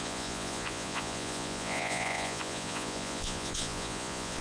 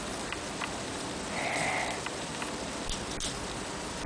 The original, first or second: second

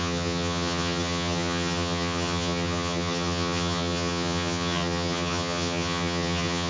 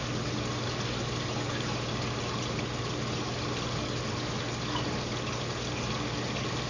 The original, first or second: second